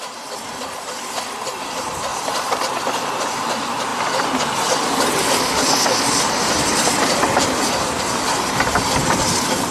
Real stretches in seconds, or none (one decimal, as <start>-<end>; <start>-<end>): 0.0-2.1; 2.6-3.9; 8.0-9.7